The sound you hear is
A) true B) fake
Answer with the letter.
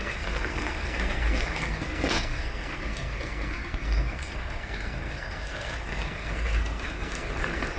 B